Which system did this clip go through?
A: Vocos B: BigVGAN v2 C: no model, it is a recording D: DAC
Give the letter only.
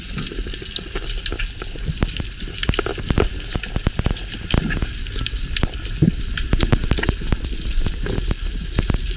C